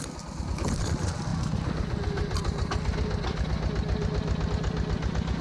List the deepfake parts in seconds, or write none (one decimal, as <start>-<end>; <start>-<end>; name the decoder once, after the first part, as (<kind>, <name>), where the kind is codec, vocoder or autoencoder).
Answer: none